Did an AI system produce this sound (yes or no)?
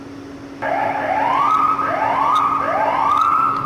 no